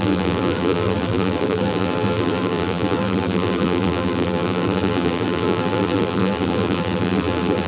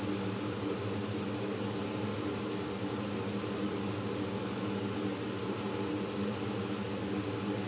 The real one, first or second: second